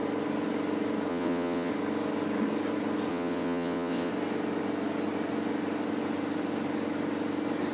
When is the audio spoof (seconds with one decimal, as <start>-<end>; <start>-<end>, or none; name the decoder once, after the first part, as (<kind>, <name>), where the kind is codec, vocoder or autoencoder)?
1.1-1.7 (vocoder, WaveNeXt); 3.1-4.1